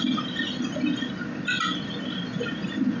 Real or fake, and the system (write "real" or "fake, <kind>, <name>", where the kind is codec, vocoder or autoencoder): real